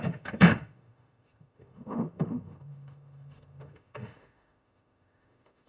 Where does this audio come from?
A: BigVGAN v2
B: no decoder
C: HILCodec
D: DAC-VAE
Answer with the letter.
D